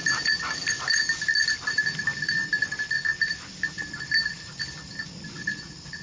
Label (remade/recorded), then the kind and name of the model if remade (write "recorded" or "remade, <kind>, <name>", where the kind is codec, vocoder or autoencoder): recorded